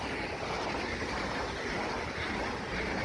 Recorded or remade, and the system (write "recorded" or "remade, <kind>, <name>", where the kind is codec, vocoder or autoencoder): recorded